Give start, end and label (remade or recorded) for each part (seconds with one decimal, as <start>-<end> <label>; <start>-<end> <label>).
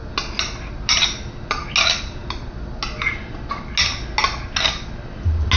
0.0-5.6 recorded